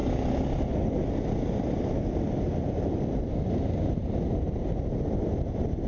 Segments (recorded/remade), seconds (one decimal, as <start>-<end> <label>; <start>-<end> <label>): 0.0-5.9 recorded